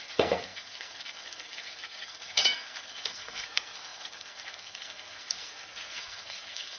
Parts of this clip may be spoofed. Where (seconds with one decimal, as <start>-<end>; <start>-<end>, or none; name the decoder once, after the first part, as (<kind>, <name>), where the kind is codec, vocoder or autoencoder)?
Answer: 0.0-6.8 (codec, SNAC)